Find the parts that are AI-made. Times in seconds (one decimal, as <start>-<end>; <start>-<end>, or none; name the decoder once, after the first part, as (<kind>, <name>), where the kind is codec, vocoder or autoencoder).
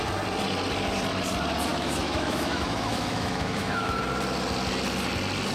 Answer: 1.7-4.0 (autoencoder, DAC-VAE)